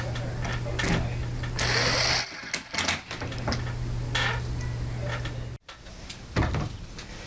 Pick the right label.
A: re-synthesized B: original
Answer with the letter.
B